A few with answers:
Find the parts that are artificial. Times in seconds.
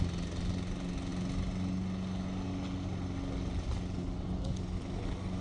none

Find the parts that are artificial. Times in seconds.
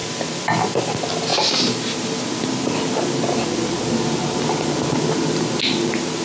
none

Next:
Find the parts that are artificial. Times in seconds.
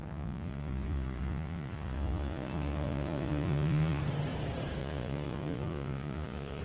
0.0-4.0 (vocoder, Vocos); 4.8-6.6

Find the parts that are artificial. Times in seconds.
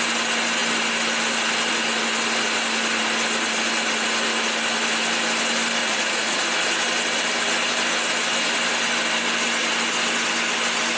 5.8-6.4 (vocoder, Vocos)